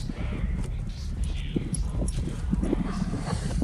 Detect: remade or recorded remade